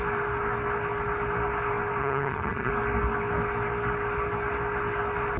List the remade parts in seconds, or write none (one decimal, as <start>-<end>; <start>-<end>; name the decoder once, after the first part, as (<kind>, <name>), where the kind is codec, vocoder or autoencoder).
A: 2.0-2.7 (vocoder, HiFi-GAN)